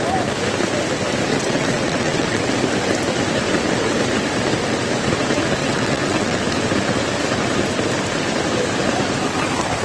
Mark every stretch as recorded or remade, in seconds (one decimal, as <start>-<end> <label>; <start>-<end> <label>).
0.0-1.3 recorded; 1.3-2.5 remade; 2.5-5.6 recorded; 5.6-6.4 remade; 6.4-9.8 recorded